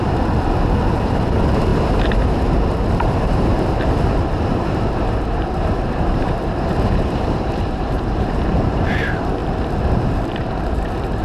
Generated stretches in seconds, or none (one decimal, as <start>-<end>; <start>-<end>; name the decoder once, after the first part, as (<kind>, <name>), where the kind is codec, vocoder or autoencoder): 0.9-9.4 (vocoder, BigVGAN v2); 9.9-11.2